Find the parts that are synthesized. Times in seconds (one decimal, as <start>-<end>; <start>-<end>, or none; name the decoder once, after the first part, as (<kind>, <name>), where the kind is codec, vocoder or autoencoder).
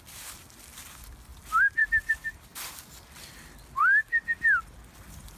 none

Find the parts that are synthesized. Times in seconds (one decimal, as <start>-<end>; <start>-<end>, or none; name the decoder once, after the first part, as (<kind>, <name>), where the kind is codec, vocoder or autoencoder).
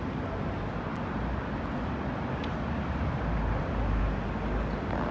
none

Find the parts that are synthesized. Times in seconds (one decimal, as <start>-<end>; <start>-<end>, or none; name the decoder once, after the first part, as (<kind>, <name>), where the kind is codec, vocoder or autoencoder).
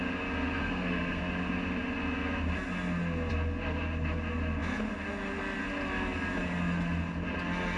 0.6-1.2 (codec, SNAC)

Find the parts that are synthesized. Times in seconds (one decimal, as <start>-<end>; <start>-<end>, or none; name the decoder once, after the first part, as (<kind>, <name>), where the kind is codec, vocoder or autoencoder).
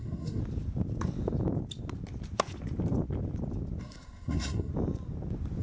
0.0-0.4 (codec, SNAC); 3.8-4.7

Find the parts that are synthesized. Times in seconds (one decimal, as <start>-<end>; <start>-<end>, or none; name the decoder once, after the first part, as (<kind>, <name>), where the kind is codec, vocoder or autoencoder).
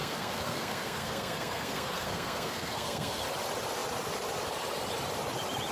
0.0-3.2 (codec, SNAC)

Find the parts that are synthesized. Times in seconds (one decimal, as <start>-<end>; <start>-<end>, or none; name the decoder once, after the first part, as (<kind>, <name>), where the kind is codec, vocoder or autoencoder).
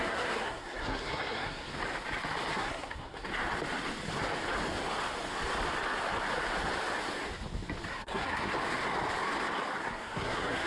0.0-1.7 (codec, SNAC); 2.5-3.3; 7.9-8.5; 9.8-10.7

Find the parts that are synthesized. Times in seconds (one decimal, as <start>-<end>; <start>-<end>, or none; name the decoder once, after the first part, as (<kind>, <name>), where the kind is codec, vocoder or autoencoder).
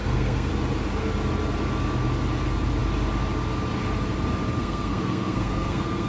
0.0-0.5 (codec, SNAC); 4.6-6.1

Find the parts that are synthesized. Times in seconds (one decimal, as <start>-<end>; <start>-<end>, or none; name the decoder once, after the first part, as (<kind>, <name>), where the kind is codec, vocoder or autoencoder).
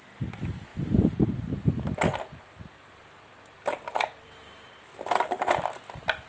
none